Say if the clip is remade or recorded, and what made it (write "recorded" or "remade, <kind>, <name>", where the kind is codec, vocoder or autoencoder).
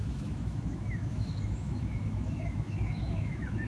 remade, autoencoder, DAC-VAE